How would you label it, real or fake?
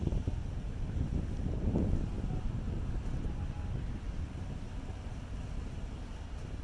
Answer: real